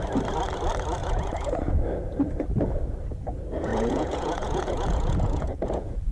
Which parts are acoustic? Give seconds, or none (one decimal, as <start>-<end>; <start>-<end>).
0.0-1.0; 1.7-3.7